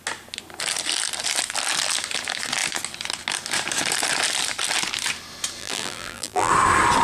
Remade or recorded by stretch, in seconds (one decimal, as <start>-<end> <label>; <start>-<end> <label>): 0.0-5.6 recorded; 5.6-6.5 remade; 6.5-7.0 recorded